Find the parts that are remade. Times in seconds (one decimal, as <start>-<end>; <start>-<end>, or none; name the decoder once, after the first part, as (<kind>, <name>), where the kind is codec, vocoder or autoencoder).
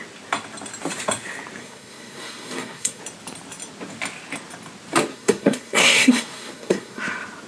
1.6-3.0 (codec, SNAC); 5.1-7.0